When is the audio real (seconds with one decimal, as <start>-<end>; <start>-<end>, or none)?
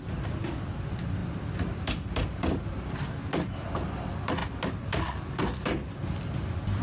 4.4-6.2